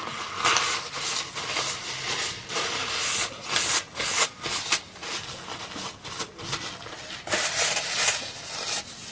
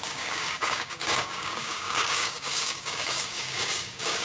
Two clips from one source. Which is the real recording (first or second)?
first